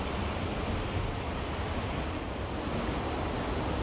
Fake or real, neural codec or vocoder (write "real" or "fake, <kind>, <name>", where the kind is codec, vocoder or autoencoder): real